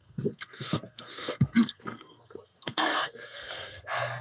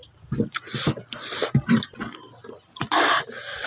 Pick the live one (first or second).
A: second